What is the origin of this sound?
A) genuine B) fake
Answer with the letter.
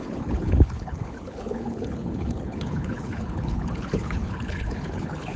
B